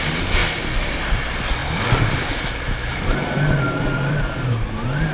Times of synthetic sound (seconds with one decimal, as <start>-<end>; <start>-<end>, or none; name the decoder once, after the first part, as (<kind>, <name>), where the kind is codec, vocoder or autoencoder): 1.6-2.3 (vocoder, BigVGAN v2); 2.9-4.1